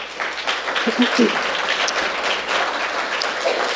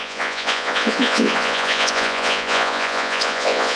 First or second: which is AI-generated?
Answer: second